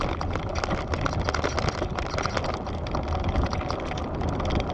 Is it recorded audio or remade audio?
recorded